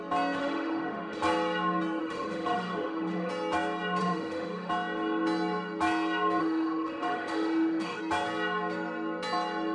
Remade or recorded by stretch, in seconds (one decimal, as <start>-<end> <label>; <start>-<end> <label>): 0.0-0.4 recorded; 0.4-1.2 remade; 1.2-2.0 recorded; 2.0-3.3 remade; 3.3-4.0 recorded; 4.0-4.7 remade; 4.7-6.4 recorded; 6.4-8.0 remade; 8.0-9.7 recorded